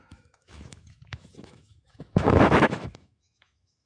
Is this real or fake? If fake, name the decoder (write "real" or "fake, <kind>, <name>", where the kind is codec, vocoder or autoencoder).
fake, autoencoder, DAC-VAE